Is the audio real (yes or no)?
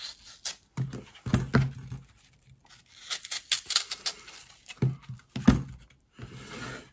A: yes